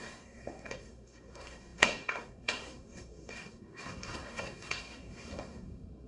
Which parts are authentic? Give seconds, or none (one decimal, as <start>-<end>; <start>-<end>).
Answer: none